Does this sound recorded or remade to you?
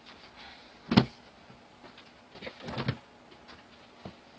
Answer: recorded